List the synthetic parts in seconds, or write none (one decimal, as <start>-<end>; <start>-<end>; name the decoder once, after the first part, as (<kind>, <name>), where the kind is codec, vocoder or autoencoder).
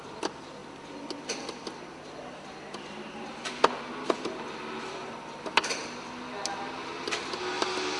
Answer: none